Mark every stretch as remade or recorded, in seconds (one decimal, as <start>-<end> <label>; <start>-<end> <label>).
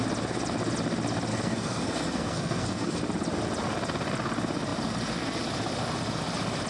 0.0-1.3 recorded; 1.3-3.0 remade; 3.0-6.7 recorded